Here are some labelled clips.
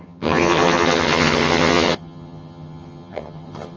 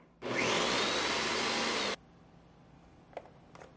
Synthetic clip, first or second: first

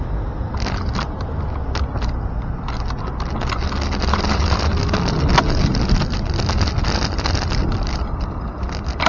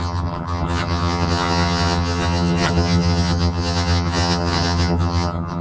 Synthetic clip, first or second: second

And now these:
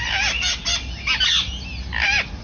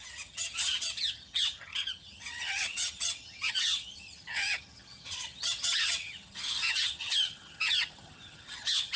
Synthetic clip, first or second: second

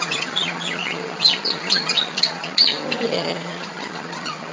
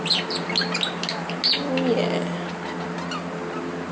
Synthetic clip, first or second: first